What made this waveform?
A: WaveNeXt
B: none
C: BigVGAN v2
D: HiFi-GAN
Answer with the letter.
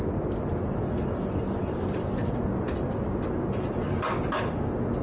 B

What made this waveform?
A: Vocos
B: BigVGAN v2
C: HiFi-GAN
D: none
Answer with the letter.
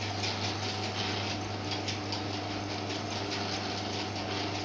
D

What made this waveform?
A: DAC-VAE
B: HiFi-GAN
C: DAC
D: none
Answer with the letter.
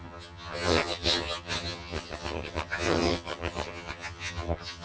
B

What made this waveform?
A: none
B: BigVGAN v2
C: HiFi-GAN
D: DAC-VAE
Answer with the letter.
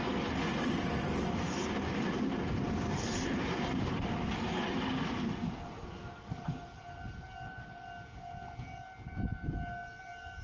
A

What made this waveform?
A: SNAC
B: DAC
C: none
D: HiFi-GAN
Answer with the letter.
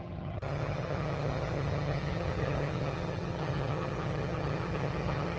D